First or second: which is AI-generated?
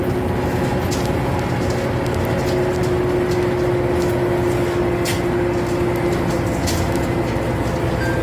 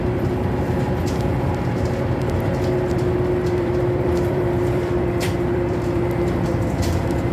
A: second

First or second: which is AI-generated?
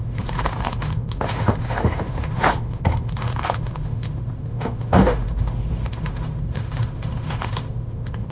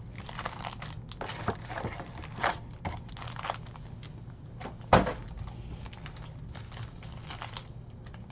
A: first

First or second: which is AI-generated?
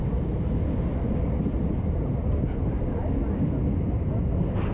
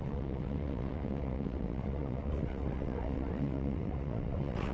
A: second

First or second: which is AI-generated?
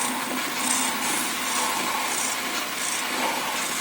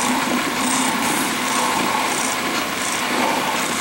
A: second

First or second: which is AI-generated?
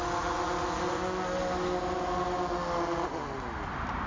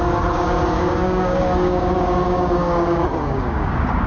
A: second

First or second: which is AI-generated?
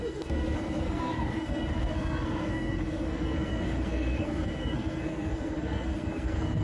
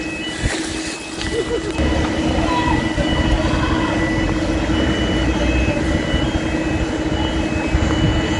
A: first